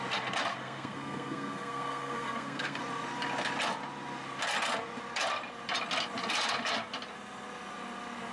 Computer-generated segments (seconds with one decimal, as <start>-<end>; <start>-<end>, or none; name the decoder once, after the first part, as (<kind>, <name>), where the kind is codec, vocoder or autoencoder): 0.5-2.8 (codec, SNAC)